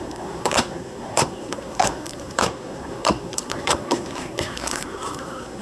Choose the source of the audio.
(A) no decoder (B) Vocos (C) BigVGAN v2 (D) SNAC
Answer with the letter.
D